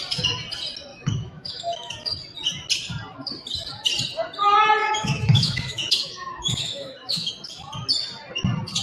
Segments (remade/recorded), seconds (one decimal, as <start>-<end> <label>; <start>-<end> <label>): 0.0-0.9 recorded; 0.9-1.9 remade; 1.9-4.8 recorded; 4.8-7.3 remade; 7.3-8.8 recorded